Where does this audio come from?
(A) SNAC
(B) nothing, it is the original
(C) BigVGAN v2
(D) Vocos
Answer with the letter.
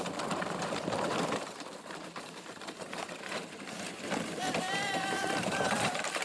C